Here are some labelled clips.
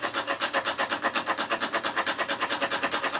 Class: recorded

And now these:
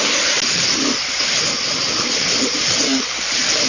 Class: recorded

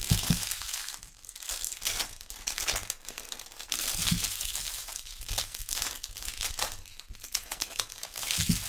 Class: remade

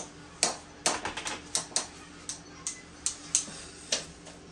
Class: recorded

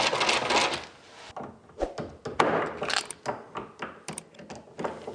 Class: recorded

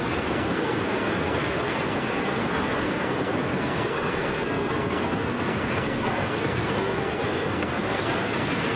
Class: remade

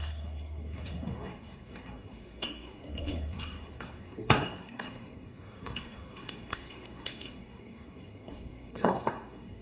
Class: remade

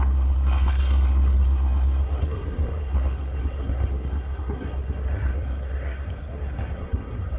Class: remade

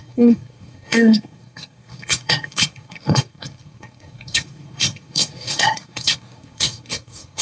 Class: remade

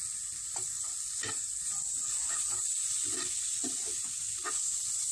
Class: recorded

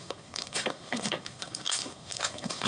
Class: remade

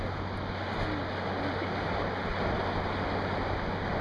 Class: recorded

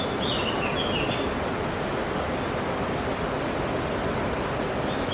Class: recorded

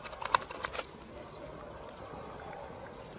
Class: recorded